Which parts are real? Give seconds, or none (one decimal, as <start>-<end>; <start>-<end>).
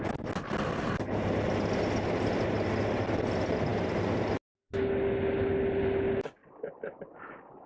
0.0-7.7